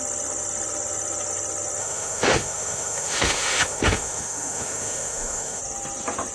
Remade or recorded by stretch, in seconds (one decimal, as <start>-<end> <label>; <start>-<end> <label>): 0.0-1.8 recorded; 1.8-5.6 remade; 5.6-6.3 recorded